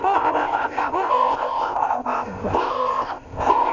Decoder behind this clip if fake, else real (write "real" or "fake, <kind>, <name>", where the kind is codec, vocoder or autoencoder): fake, codec, ZipCodec